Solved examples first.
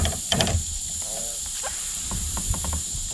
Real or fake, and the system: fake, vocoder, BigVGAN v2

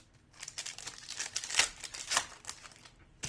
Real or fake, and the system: real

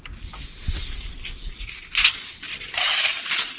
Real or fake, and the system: real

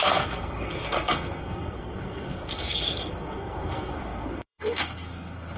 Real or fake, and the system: fake, codec, SNAC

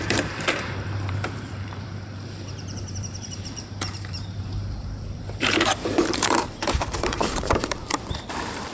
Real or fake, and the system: fake, vocoder, BigVGAN v2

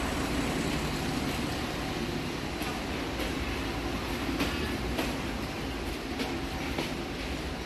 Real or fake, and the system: real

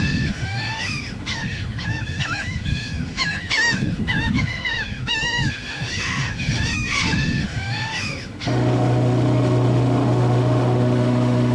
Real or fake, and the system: fake, autoencoder, DAC-VAE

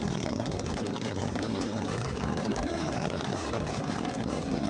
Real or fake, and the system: fake, codec, SNAC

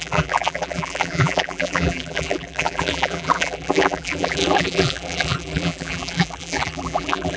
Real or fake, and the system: fake, vocoder, BigVGAN v2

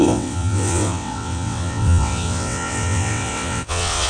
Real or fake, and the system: fake, vocoder, WaveNeXt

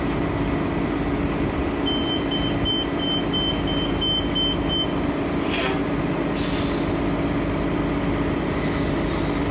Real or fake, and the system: real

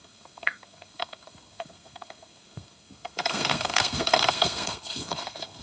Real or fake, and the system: fake, codec, SNAC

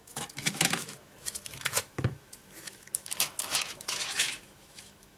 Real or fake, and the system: fake, autoencoder, DAC-VAE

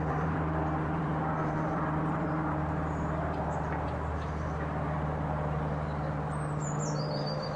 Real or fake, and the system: fake, vocoder, BigVGAN v2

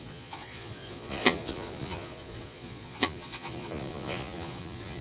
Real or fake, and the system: fake, vocoder, Vocos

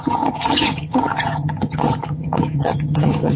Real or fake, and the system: fake, vocoder, HiFi-GAN